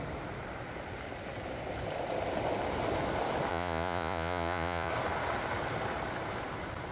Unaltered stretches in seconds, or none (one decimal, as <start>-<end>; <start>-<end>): 0.0-3.5; 4.9-6.9